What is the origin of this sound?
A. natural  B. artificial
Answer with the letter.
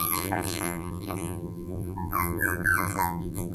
B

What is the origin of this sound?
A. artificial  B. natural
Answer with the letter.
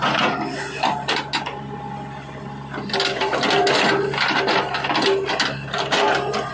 B